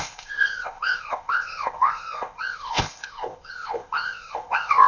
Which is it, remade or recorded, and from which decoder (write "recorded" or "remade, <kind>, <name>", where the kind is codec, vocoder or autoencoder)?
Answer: remade, codec, ZipCodec